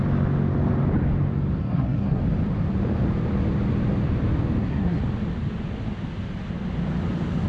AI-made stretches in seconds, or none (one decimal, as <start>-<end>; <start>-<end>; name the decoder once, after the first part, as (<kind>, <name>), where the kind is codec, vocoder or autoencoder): 1.6-2.2 (codec, SNAC); 4.6-5.0